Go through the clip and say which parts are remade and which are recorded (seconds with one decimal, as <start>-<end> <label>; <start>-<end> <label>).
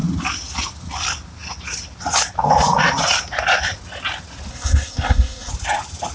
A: 0.0-4.5 recorded; 4.5-5.5 remade; 5.5-6.1 recorded